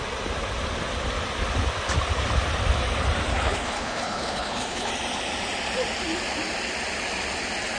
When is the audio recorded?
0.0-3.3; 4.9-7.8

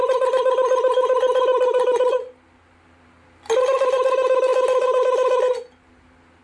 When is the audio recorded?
0.0-6.4

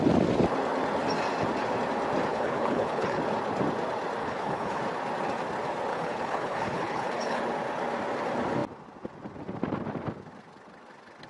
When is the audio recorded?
0.0-2.3; 3.2-4.2; 4.8-5.9; 7.4-11.3